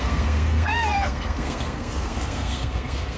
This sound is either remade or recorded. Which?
remade